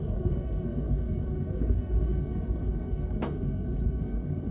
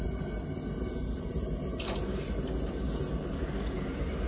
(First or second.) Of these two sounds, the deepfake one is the first